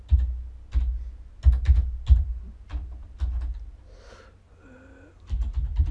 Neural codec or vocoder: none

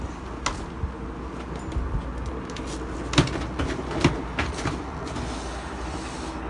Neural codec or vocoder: none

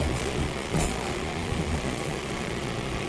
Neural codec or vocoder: vocoder, Vocos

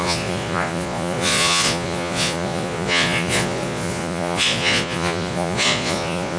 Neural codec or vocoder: vocoder, Vocos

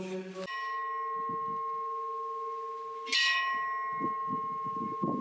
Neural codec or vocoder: none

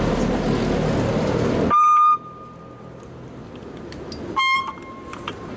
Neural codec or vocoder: none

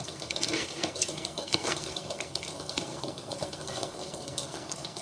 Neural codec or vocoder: codec, SNAC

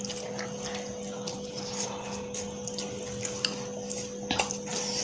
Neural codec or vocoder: none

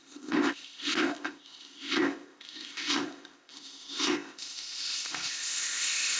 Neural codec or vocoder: codec, ZipCodec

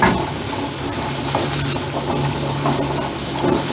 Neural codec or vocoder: none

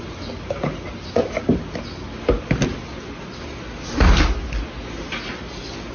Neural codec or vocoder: none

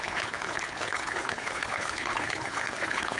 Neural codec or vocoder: codec, HILCodec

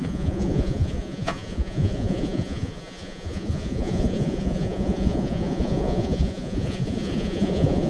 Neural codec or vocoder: vocoder, Vocos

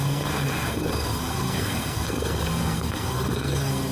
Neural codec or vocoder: codec, SNAC